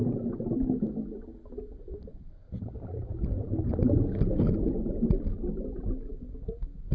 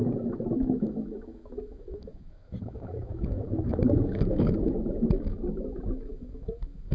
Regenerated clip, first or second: second